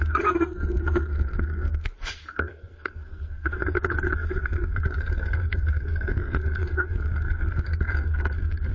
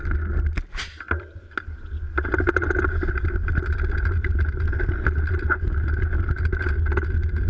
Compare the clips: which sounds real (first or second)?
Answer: second